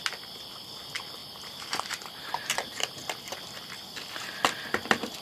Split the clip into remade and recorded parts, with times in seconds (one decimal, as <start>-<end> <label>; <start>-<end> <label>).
0.0-1.2 recorded; 1.2-3.4 remade; 3.4-5.2 recorded

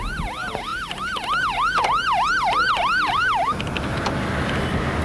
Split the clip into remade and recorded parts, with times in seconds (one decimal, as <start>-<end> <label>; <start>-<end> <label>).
0.0-5.0 recorded

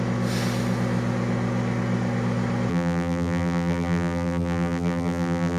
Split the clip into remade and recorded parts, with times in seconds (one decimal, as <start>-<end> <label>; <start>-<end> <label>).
0.0-2.7 recorded; 2.7-5.6 remade

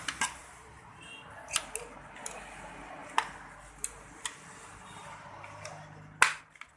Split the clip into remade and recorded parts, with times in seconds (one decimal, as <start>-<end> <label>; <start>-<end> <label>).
0.0-6.8 recorded

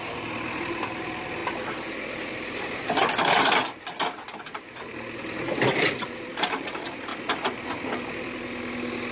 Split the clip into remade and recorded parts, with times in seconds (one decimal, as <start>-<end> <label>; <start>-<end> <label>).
0.0-1.4 remade; 1.4-2.2 recorded; 2.2-3.6 remade; 3.6-4.4 recorded; 4.4-7.1 remade; 7.1-9.1 recorded

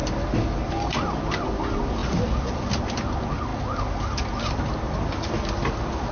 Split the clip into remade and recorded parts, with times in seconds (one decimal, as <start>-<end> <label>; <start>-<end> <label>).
0.0-6.1 recorded

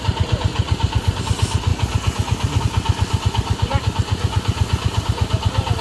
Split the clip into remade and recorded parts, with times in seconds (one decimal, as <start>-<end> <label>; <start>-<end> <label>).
0.0-0.5 recorded; 0.5-1.2 remade; 1.2-5.8 recorded

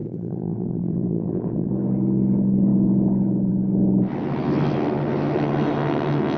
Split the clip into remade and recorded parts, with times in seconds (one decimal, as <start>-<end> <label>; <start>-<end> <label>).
0.0-1.7 remade; 1.7-6.4 recorded